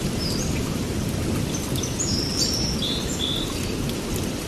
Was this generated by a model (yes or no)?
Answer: no